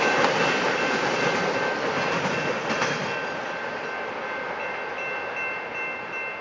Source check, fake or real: real